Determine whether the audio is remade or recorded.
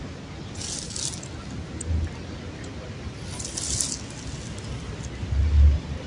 recorded